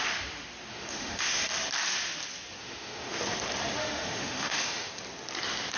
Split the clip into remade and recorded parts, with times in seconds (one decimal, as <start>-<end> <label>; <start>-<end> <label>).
0.0-0.7 recorded; 0.7-1.4 remade; 1.4-2.6 recorded; 2.6-3.2 remade; 3.2-3.8 recorded; 3.8-4.9 remade; 4.9-5.8 recorded